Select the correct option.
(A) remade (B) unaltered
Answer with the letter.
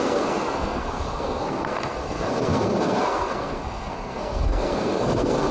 A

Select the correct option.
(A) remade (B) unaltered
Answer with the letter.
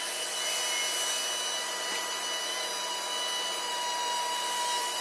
B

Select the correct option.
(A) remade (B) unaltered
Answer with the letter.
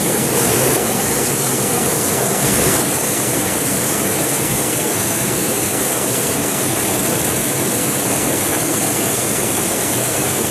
A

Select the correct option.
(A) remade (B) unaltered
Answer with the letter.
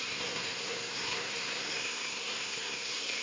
A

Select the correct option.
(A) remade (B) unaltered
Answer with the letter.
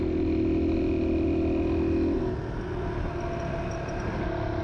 B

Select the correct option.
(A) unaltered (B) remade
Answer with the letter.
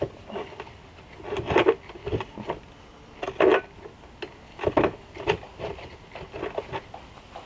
A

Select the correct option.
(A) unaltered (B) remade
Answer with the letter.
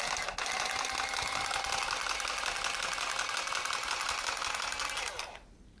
A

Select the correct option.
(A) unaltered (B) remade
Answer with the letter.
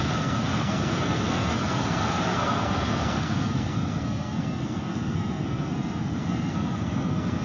B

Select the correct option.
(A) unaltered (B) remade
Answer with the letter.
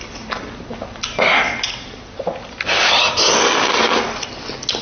A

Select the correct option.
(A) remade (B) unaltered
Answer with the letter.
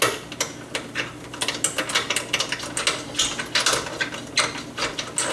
B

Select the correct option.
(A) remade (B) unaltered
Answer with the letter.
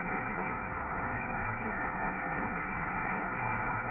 A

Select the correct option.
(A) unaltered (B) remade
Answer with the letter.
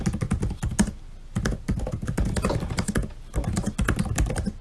A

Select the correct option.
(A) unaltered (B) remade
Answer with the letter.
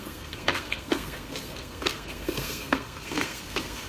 B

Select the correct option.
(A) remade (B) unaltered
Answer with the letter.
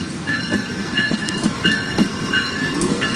A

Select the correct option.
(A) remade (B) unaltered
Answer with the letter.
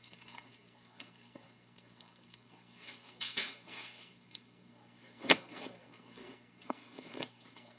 A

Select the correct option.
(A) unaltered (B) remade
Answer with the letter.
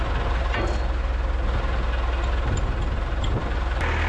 A